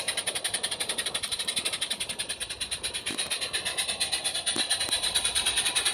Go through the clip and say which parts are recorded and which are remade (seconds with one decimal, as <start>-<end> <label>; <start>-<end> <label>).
0.0-2.4 remade; 2.4-4.9 recorded; 4.9-5.9 remade